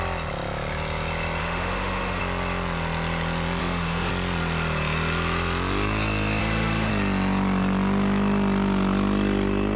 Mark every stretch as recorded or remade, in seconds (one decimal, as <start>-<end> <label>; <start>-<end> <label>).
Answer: 0.0-1.4 recorded; 1.4-2.2 remade; 2.2-3.6 recorded; 3.6-4.1 remade; 4.1-6.4 recorded; 6.4-6.9 remade; 6.9-9.8 recorded